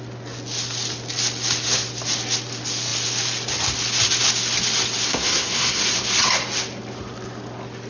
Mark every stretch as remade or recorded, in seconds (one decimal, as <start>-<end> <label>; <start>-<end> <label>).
0.0-5.1 recorded; 5.1-5.8 remade; 5.8-7.9 recorded